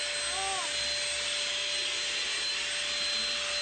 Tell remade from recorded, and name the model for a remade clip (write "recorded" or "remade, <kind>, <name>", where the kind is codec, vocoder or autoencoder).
recorded